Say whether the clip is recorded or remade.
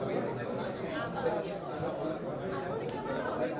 recorded